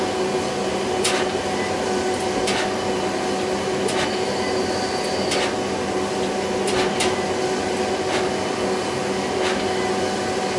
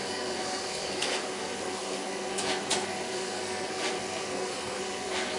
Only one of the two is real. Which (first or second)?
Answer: first